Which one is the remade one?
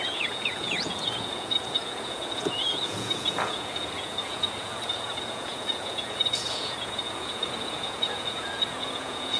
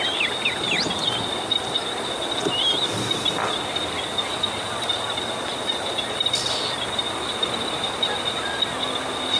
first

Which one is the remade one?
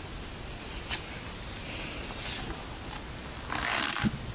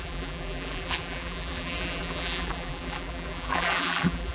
second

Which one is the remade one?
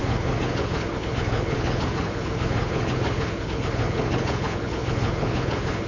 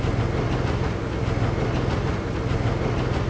first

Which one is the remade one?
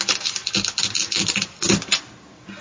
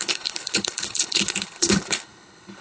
second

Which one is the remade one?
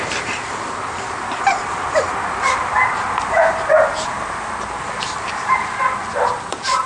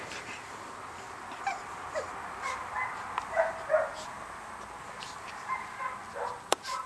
first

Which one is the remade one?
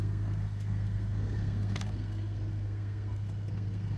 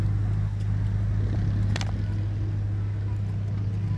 first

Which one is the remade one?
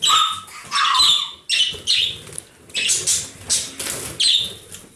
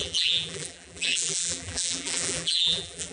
second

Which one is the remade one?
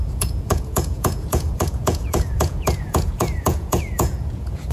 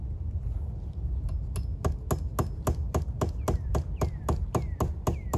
first